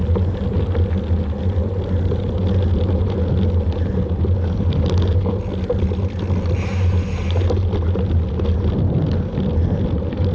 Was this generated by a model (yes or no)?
no